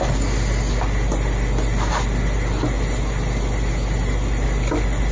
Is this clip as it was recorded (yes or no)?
yes